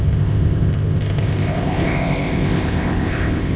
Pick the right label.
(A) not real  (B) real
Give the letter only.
A